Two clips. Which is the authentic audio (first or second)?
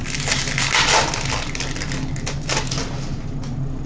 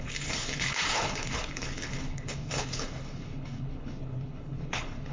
first